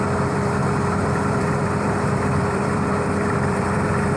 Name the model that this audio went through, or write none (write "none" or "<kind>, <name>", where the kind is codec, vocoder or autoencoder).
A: vocoder, BigVGAN v2